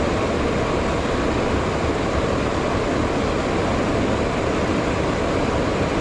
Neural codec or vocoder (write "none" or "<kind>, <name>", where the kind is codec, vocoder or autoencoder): none